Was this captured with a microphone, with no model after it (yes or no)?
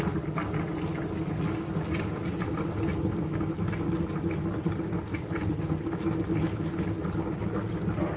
yes